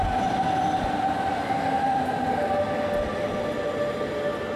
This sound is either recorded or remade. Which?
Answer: recorded